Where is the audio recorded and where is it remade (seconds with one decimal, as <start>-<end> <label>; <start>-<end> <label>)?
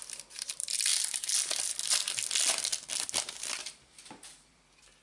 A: 0.0-0.9 remade; 0.9-3.6 recorded; 3.6-5.0 remade